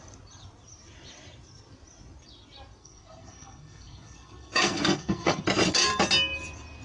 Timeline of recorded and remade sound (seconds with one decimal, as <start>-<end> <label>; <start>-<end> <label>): 0.0-2.8 recorded; 2.8-5.4 remade; 5.4-6.8 recorded